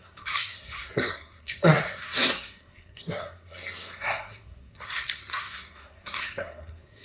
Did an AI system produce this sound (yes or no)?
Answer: yes